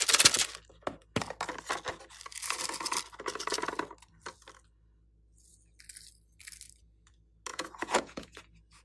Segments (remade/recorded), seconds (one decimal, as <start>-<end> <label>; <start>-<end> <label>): 0.0-7.5 recorded; 7.5-8.4 remade; 8.4-8.8 recorded